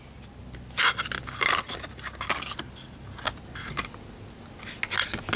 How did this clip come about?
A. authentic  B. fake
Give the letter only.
A